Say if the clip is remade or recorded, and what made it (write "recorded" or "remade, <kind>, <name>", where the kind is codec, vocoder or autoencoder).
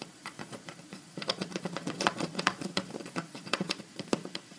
remade, vocoder, Vocos